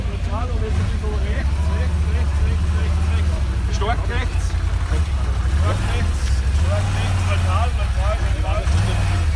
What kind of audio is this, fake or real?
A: real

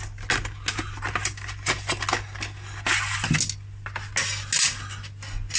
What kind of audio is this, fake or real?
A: real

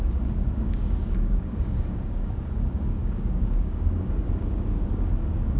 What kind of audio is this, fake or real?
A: fake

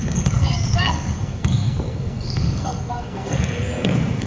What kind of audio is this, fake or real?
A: fake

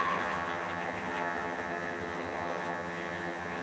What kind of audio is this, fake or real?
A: fake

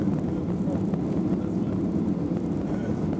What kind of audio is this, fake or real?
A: real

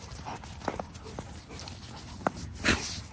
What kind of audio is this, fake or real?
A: real